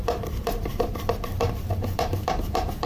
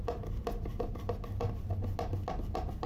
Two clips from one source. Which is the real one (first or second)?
second